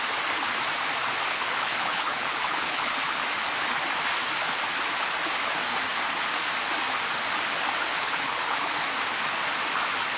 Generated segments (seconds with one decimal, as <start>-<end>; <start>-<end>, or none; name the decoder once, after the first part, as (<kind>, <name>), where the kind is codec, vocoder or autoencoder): 1.3-3.2 (codec, HILCodec); 7.9-8.7